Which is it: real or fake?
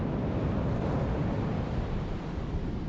real